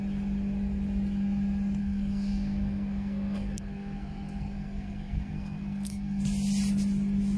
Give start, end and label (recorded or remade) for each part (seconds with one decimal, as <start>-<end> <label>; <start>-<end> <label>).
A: 0.0-1.8 recorded; 1.8-6.2 remade; 6.2-7.4 recorded